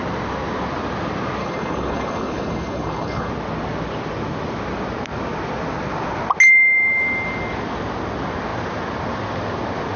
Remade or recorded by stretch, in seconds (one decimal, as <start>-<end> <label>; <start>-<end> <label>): 0.0-1.4 recorded; 1.4-3.3 remade; 3.3-10.0 recorded